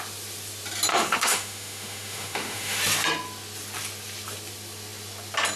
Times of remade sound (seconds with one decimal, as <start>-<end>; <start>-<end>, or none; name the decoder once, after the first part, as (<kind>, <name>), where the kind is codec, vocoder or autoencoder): 0.9-2.8 (autoencoder, DAC-VAE)